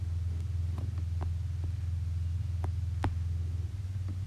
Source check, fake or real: real